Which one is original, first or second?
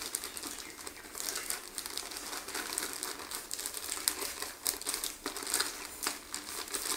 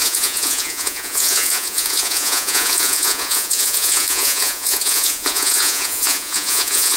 first